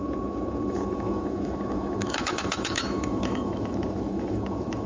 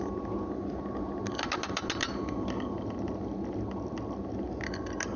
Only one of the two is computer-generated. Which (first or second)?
first